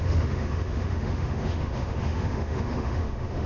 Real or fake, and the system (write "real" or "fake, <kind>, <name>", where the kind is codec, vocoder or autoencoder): fake, autoencoder, DAC-VAE